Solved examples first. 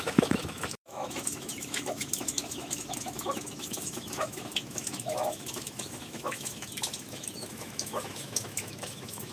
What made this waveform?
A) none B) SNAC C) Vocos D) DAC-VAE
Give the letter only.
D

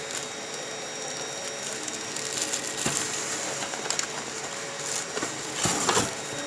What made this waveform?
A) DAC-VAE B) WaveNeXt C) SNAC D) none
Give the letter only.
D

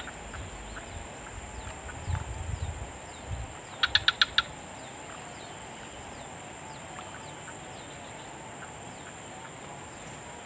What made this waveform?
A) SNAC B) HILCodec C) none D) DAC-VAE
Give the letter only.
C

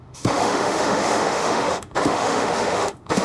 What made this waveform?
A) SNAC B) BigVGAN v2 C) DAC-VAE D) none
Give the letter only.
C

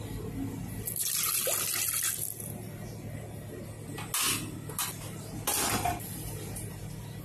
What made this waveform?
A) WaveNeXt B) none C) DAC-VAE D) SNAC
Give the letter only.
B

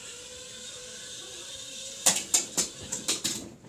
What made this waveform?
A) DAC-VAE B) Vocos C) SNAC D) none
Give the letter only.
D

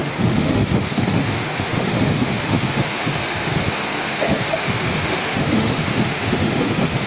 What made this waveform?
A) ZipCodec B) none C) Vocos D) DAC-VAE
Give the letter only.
D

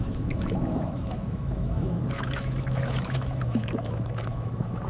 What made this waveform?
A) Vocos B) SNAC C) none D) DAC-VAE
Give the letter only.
D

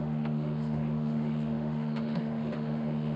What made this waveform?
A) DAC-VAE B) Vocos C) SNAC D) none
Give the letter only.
A